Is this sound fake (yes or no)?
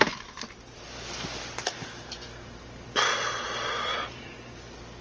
yes